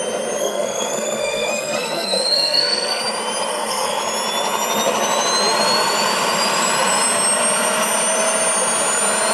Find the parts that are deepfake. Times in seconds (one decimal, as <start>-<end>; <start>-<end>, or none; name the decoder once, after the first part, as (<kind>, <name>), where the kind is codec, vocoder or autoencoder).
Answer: 0.4-3.0 (codec, SNAC); 3.5-4.0